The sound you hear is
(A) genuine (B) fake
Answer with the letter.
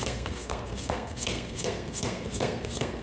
B